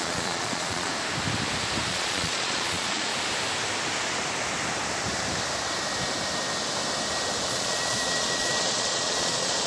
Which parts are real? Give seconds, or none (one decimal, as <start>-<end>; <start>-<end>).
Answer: 0.9-1.9; 3.1-7.5